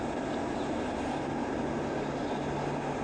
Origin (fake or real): real